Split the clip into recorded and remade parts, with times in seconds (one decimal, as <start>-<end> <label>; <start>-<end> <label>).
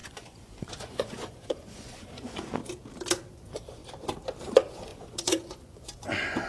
0.0-2.6 remade; 2.6-3.3 recorded; 3.3-3.8 remade; 3.8-4.4 recorded; 4.4-6.5 remade